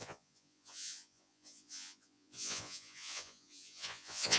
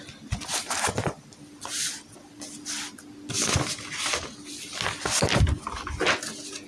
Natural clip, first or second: second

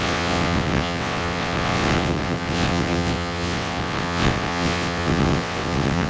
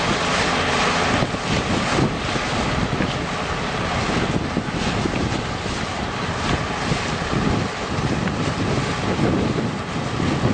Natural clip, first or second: second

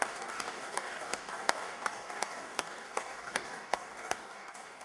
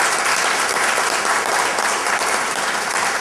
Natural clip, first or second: second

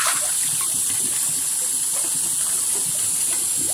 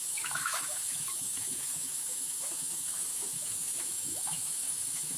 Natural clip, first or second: first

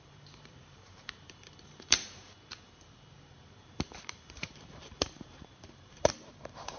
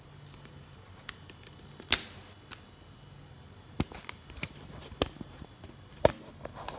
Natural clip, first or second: second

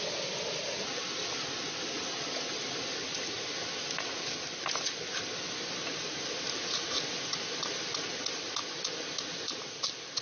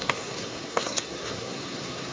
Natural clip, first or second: first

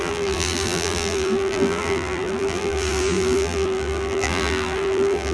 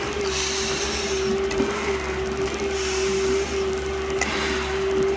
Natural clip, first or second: second